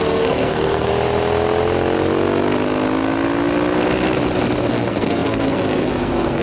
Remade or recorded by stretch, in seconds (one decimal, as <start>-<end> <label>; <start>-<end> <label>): 0.0-0.9 remade; 0.9-4.7 recorded; 4.7-6.4 remade